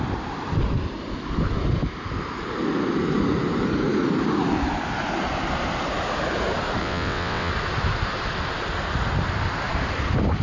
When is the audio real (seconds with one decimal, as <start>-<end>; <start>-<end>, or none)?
0.0-6.8; 7.5-10.4